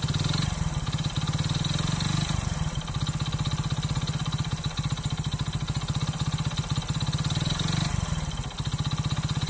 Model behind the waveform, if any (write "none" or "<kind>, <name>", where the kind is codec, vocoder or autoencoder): none